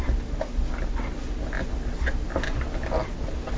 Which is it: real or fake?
real